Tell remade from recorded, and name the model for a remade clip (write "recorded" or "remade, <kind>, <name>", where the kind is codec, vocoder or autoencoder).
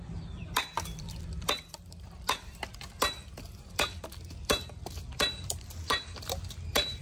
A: remade, vocoder, BigVGAN v2